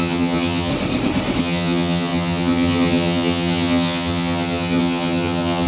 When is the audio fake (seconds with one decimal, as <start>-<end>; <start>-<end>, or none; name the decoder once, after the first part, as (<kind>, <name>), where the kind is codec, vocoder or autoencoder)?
0.0-0.7 (vocoder, HiFi-GAN); 1.4-5.7